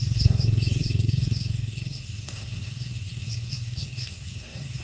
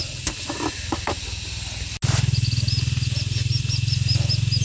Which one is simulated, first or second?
first